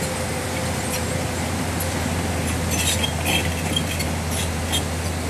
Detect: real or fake real